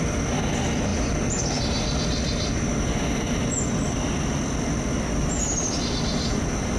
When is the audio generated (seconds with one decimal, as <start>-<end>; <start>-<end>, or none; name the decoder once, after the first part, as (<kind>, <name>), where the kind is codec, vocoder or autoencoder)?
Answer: none